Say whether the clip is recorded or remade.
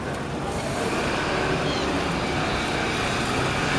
recorded